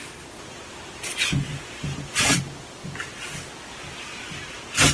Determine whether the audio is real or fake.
real